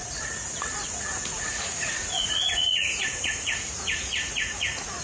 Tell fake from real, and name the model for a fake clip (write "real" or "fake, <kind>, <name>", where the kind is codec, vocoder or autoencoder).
fake, vocoder, Vocos